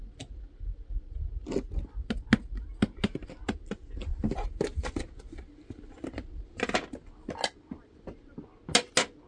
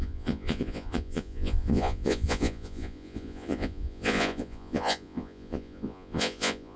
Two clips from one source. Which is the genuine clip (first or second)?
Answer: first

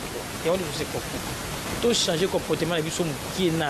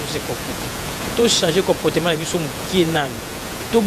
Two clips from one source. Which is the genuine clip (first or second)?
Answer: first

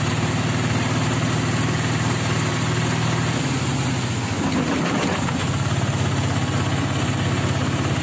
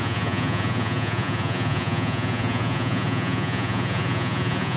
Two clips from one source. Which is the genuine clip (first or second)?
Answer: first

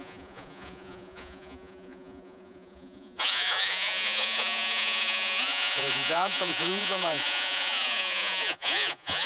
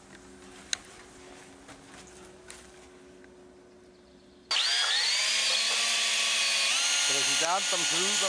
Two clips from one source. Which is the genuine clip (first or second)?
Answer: second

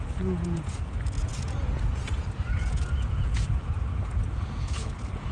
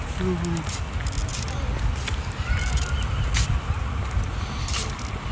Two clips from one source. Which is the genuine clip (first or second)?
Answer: second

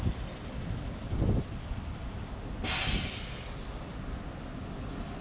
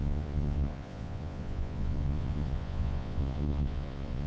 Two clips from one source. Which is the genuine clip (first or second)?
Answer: first